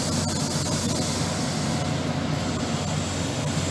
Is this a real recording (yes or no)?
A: yes